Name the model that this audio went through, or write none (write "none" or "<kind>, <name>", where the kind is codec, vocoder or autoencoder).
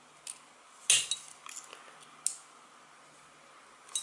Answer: none